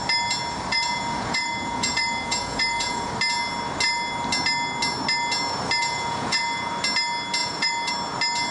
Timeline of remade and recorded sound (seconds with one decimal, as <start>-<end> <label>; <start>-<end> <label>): 0.0-0.7 recorded; 0.7-3.1 remade; 3.1-5.8 recorded; 5.8-6.7 remade; 6.7-7.4 recorded; 7.4-7.9 remade; 7.9-8.5 recorded